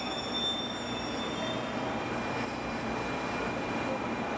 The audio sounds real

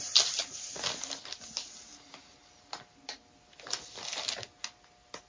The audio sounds real